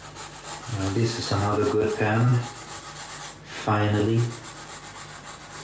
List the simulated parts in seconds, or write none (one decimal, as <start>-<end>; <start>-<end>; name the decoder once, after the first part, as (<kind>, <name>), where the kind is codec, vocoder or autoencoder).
0.7-1.9 (codec, DAC)